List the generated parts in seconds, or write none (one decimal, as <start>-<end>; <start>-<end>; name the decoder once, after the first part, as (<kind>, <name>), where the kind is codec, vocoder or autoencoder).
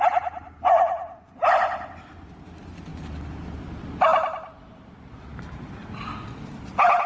none